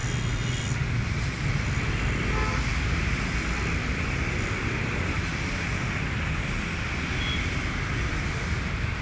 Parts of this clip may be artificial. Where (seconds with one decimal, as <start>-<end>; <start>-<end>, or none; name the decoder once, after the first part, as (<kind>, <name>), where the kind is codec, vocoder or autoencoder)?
none